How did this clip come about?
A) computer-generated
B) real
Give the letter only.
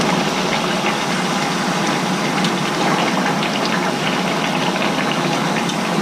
B